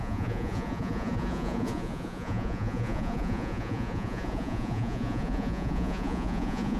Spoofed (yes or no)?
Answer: yes